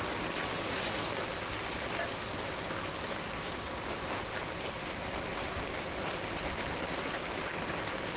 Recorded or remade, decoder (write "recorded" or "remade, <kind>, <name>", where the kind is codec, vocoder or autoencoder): recorded